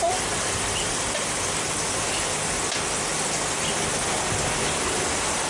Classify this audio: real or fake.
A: real